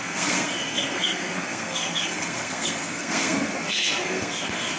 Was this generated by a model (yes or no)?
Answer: yes